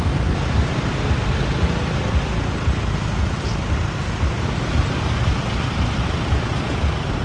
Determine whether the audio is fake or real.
real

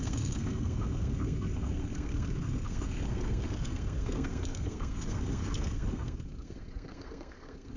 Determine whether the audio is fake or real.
fake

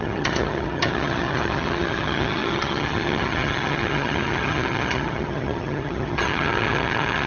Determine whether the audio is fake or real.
fake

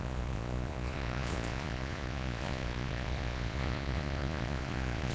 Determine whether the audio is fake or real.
fake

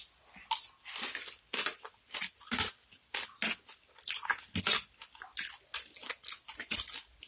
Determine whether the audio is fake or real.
real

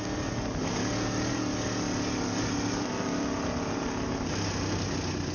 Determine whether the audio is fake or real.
real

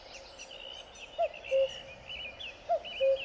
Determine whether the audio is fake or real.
real